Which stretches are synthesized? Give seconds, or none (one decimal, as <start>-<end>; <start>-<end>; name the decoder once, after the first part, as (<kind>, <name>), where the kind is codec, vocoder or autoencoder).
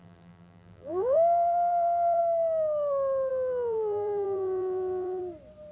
0.0-2.2 (vocoder, BigVGAN v2); 3.3-5.2